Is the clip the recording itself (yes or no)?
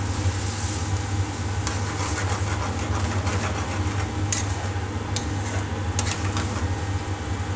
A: yes